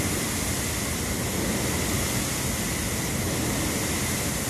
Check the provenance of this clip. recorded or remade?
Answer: recorded